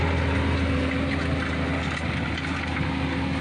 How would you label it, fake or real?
real